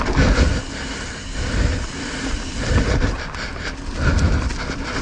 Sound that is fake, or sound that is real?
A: real